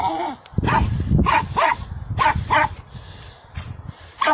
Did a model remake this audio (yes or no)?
no